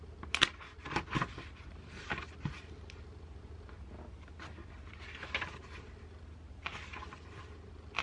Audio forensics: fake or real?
real